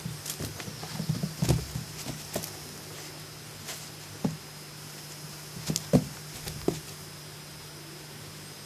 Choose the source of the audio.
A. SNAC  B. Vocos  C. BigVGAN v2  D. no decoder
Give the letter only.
D